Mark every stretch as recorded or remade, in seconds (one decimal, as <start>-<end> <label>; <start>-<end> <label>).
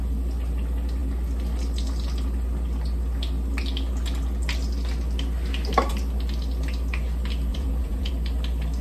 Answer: 0.0-7.5 recorded; 7.5-8.1 remade; 8.1-8.8 recorded